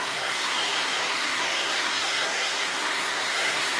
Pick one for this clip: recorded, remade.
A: remade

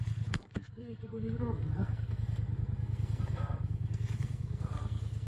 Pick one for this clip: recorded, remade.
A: remade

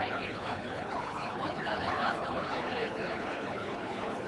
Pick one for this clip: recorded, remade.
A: remade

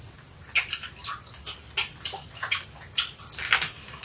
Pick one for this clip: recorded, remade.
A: recorded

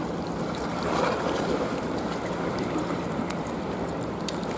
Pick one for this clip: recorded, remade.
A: recorded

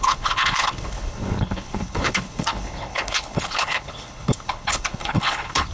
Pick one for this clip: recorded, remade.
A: remade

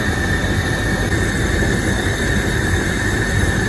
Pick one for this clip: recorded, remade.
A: remade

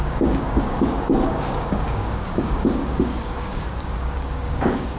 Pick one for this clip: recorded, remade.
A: remade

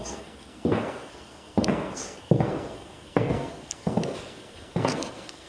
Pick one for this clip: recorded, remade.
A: remade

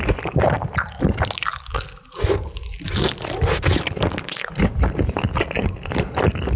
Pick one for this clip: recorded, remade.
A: recorded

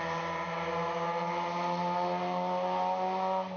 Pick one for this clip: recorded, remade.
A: recorded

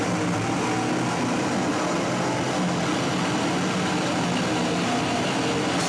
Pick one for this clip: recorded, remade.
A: recorded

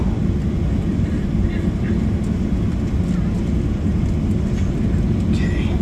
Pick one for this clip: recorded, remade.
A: recorded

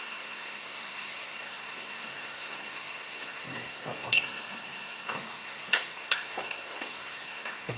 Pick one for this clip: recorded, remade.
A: remade